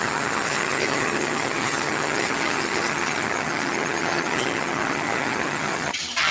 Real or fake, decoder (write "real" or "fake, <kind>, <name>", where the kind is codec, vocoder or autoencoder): fake, vocoder, HiFi-GAN